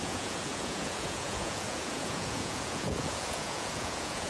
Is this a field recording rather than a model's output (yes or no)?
no